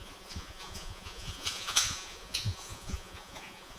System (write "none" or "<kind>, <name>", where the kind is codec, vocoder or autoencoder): vocoder, Vocos